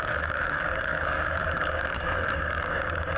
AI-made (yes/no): yes